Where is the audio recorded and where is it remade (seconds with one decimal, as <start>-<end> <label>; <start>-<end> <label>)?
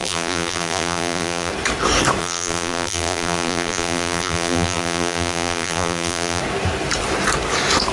0.0-1.5 remade; 1.5-2.2 recorded; 2.2-6.4 remade; 6.4-7.9 recorded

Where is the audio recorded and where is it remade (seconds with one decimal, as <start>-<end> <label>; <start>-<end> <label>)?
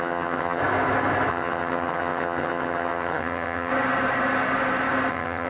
0.0-0.6 remade; 0.6-1.3 recorded; 1.3-3.7 remade; 3.7-5.1 recorded; 5.1-5.5 remade